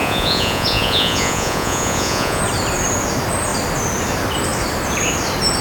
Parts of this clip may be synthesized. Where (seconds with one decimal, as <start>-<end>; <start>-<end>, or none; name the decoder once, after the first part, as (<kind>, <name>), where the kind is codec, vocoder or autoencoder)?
0.0-2.4 (vocoder, Vocos)